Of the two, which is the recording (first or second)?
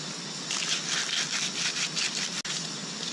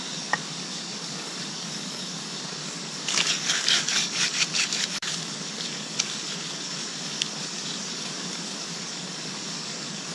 first